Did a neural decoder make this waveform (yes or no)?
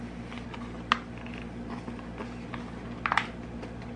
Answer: no